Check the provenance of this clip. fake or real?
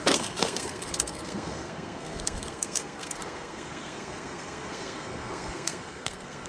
fake